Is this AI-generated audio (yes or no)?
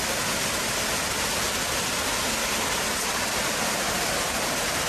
no